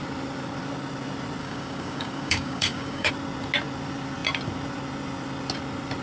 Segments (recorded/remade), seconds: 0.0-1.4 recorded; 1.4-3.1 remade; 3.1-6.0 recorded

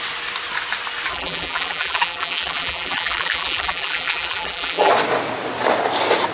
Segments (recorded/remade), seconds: 0.0-1.1 recorded; 1.1-4.9 remade; 4.9-6.3 recorded

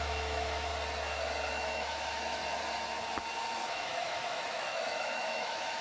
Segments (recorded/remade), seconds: 0.0-0.7 remade; 0.7-1.5 recorded; 1.5-2.4 remade; 2.4-3.7 recorded; 3.7-5.8 remade

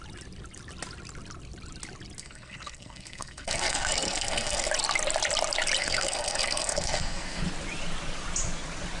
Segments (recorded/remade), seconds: 0.0-2.2 recorded; 2.2-4.7 remade; 4.7-5.8 recorded; 5.8-7.4 remade; 7.4-9.0 recorded

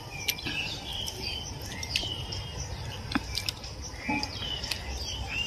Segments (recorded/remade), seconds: 0.0-5.5 recorded

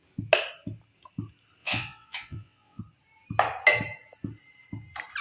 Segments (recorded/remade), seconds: 0.0-1.6 recorded; 1.6-2.8 remade; 2.8-5.2 recorded